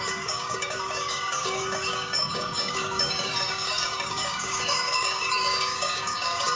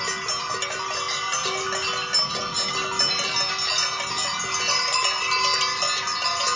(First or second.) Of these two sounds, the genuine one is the second